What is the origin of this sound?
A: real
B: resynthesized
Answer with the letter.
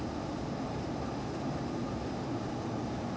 A